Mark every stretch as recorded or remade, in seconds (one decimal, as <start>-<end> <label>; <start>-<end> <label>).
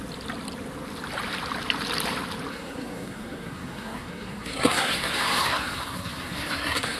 0.0-2.5 recorded; 2.5-7.0 remade